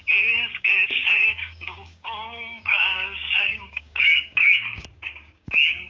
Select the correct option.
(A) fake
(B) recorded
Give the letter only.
A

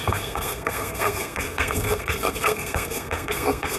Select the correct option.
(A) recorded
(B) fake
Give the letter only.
B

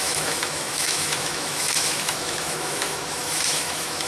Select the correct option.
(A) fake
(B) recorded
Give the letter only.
A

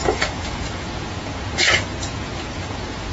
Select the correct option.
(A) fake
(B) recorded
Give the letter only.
A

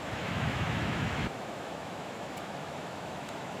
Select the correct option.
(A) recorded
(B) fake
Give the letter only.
B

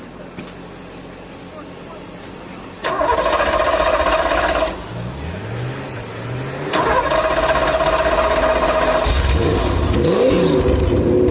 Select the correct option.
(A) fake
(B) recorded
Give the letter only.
B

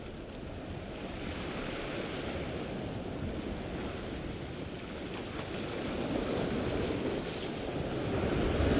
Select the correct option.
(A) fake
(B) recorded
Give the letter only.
B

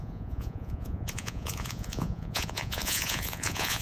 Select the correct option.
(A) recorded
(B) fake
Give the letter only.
B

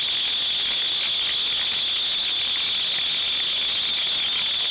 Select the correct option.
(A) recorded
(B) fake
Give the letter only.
A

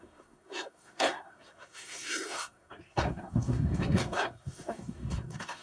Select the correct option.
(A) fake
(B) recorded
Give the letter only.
A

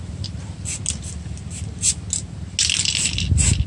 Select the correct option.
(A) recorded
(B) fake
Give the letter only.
A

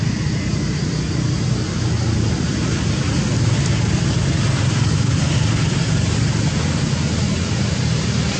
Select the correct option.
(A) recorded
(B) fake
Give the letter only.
A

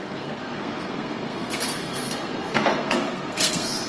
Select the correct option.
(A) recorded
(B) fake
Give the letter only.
B